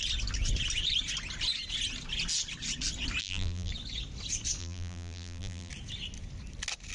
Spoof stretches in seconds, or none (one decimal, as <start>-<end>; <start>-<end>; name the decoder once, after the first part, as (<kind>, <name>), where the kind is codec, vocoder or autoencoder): 3.2-3.7 (vocoder, BigVGAN v2); 4.6-5.7